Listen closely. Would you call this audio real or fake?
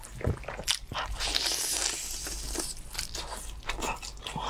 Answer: real